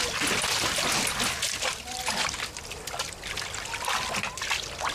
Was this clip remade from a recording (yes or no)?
no